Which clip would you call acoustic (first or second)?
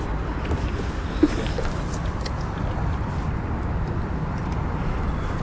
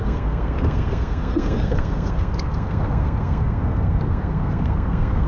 first